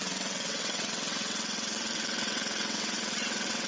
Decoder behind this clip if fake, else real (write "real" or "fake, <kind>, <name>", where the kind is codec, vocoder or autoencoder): fake, vocoder, WaveNeXt